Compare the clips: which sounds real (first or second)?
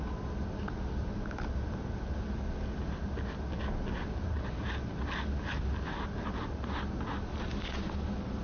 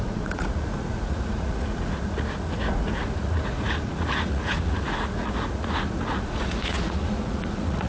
first